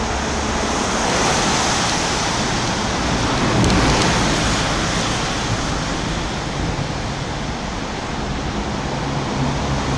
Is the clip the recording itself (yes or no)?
yes